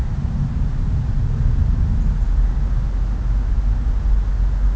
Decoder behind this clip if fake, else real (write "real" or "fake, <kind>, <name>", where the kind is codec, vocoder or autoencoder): real